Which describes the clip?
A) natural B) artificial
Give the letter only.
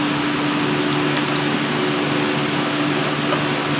A